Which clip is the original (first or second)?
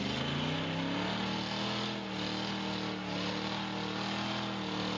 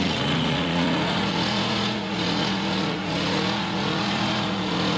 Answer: first